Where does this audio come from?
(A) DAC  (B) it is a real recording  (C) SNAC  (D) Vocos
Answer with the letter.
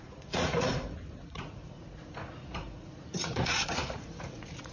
D